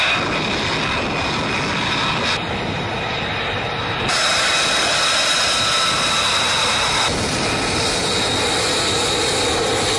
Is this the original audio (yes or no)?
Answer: yes